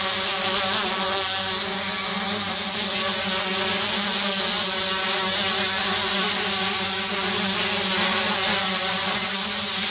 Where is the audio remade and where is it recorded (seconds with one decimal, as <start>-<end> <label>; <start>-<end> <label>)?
0.0-8.8 recorded; 8.8-9.9 remade